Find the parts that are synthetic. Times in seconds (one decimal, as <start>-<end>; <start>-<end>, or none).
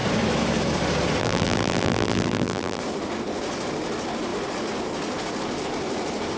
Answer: 1.2-2.8